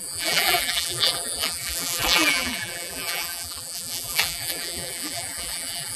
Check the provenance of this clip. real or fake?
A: fake